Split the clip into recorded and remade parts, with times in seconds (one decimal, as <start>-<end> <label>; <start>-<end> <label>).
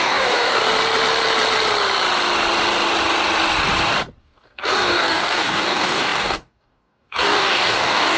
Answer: 0.0-0.6 remade; 0.6-4.2 recorded; 4.2-8.2 remade